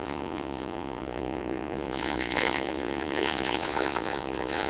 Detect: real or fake fake